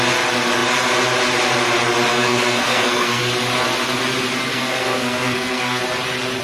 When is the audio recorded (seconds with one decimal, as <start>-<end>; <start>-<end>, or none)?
0.0-2.1; 3.2-4.5; 5.8-6.4